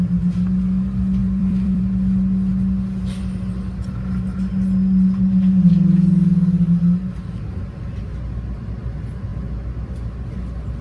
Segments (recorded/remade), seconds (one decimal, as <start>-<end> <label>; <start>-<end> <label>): 0.0-1.2 recorded; 1.2-1.8 remade; 1.8-10.8 recorded